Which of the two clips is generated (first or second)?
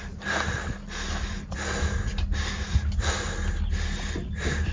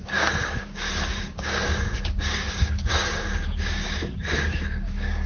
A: second